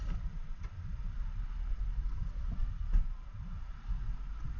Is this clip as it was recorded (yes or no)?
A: yes